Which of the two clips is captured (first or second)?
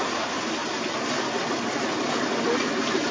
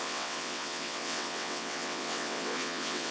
first